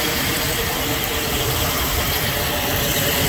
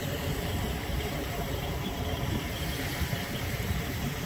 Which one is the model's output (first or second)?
second